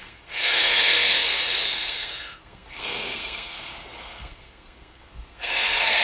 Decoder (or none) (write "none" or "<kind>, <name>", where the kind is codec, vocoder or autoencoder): codec, SNAC